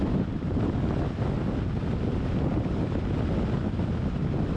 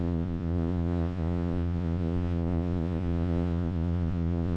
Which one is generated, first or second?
second